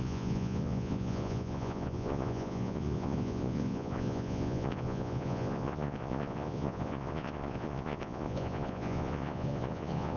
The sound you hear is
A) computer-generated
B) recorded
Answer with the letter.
A